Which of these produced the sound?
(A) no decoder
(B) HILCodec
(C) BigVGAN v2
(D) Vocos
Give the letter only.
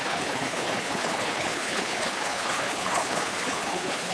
B